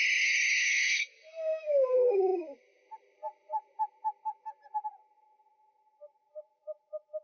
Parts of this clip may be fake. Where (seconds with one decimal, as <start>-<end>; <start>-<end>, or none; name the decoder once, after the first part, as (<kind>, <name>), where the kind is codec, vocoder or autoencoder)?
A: 0.6-1.7 (codec, SNAC)